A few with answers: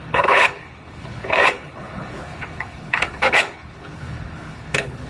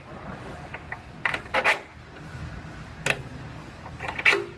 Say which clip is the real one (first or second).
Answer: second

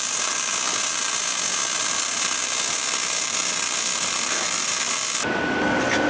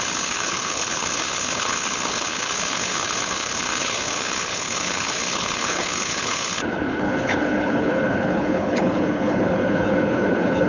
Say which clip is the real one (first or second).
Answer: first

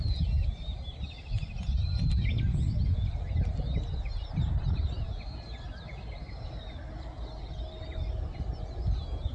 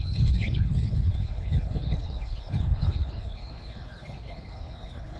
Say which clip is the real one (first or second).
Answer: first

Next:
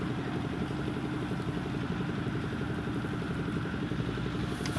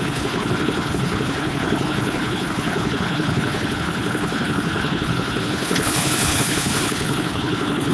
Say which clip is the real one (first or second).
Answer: first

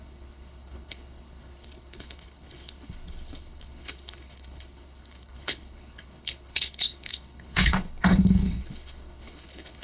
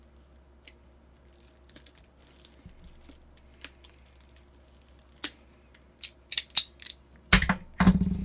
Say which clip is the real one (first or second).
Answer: second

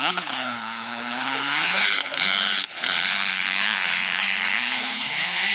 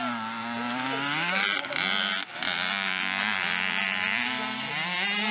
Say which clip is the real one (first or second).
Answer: second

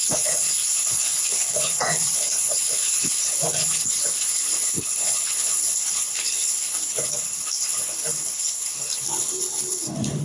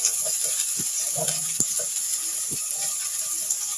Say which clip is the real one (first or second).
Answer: second